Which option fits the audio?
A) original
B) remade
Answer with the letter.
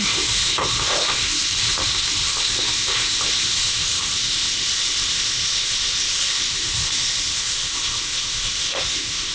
B